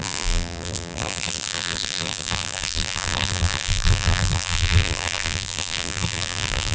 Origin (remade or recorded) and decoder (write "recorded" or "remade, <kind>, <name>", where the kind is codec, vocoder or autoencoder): remade, vocoder, BigVGAN v2